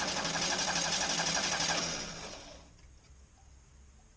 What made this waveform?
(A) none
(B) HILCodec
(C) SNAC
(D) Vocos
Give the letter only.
A